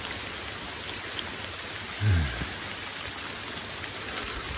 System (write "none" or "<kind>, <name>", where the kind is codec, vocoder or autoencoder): none